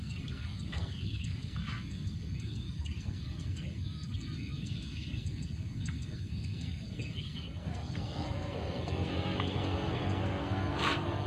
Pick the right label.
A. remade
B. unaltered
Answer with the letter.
A